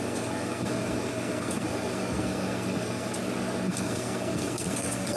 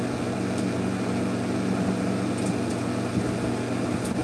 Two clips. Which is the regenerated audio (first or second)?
first